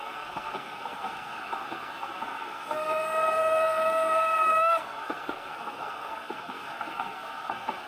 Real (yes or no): no